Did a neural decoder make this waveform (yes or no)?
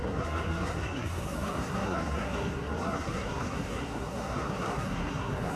yes